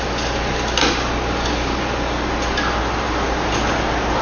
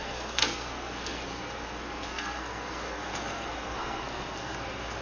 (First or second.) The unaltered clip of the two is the first